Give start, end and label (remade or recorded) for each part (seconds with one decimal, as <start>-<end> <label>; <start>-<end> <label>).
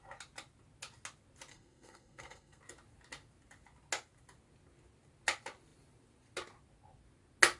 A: 0.0-1.5 recorded; 1.5-2.6 remade; 2.6-7.6 recorded